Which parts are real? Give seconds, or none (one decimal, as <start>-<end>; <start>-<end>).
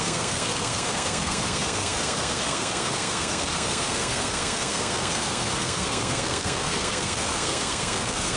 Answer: none